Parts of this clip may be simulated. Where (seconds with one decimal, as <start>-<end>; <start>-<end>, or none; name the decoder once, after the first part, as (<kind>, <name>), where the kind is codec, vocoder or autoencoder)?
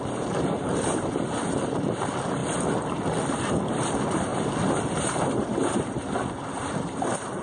0.0-2.4 (vocoder, BigVGAN v2); 3.7-4.3; 4.9-7.4